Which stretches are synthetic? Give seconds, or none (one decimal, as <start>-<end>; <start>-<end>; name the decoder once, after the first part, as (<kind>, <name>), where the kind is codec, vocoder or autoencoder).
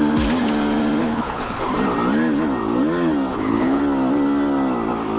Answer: 1.0-1.7 (codec, HILCodec); 3.3-3.8